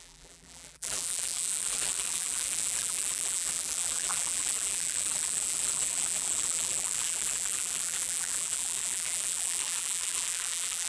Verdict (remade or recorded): remade